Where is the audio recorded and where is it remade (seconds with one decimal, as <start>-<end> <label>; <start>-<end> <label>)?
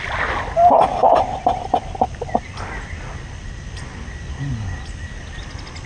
0.0-5.9 recorded